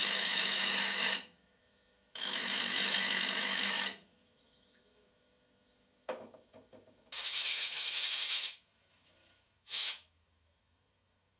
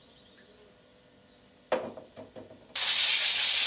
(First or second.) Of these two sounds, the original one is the second